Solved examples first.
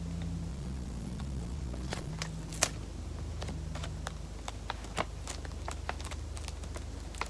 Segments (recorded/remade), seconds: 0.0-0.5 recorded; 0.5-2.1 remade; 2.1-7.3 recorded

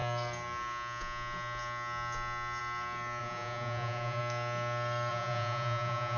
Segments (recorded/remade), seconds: 0.0-3.2 recorded; 3.2-4.2 remade; 4.2-5.1 recorded; 5.1-6.2 remade

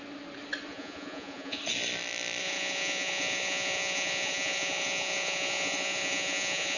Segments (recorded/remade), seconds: 0.0-0.7 recorded; 0.7-1.6 remade; 1.6-2.4 recorded; 2.4-6.8 remade